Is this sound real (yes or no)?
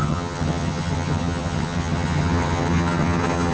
no